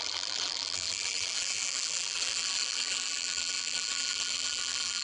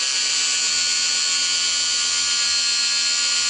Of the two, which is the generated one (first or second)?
first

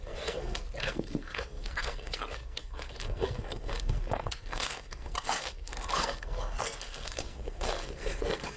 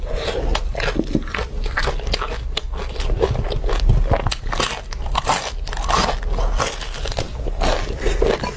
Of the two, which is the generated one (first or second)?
first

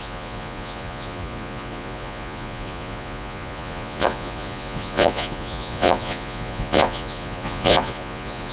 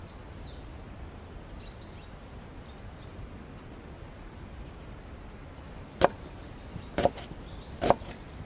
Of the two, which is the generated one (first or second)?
first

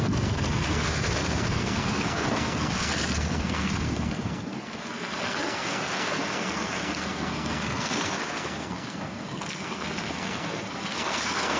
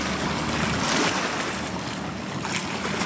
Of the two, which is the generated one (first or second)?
first